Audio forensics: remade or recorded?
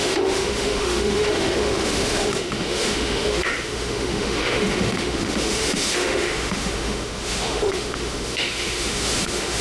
remade